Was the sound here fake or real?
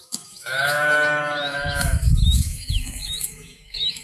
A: fake